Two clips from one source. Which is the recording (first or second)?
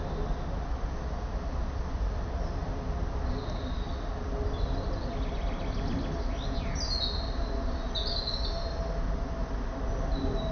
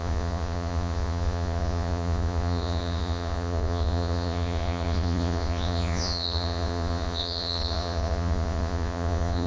first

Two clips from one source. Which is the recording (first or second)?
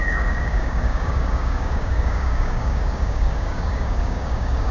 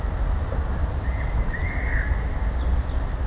second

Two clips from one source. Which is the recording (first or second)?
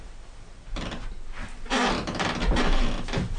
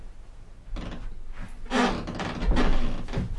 second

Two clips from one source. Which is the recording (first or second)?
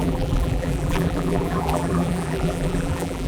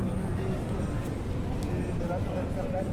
second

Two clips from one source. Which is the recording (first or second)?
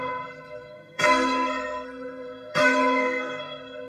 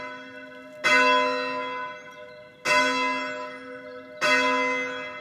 second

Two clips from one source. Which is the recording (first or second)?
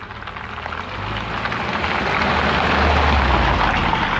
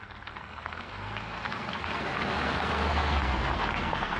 first